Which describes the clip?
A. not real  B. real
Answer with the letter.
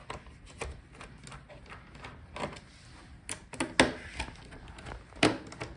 B